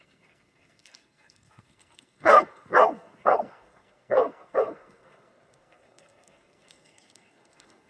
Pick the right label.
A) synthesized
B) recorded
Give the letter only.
A